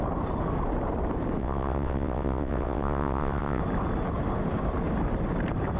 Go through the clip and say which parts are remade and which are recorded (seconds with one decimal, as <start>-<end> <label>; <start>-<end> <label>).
0.0-1.4 recorded; 1.4-3.6 remade; 3.6-5.8 recorded